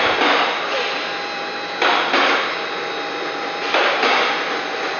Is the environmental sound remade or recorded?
remade